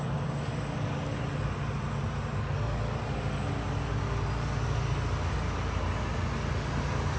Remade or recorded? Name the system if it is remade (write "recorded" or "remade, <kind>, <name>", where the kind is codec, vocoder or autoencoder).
recorded